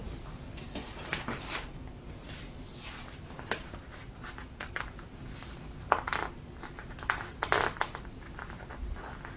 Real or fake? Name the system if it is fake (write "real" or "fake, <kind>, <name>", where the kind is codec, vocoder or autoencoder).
real